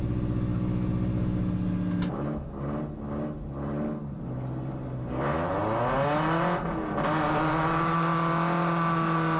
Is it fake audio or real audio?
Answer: real